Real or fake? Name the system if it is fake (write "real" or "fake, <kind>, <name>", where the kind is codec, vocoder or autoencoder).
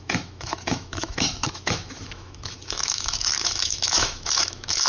fake, autoencoder, DAC-VAE